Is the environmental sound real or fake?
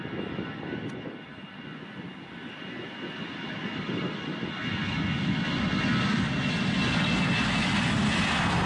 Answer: real